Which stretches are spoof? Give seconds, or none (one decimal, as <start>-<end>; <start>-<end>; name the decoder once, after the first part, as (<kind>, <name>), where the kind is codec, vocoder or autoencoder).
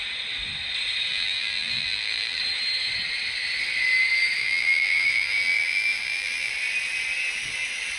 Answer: 1.1-2.4 (vocoder, BigVGAN v2); 4.4-6.5